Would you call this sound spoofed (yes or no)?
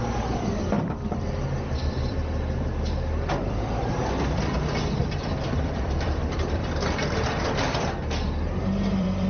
yes